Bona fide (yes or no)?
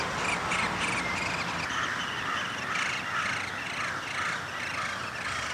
yes